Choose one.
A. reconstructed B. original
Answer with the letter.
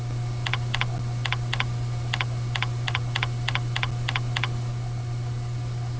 B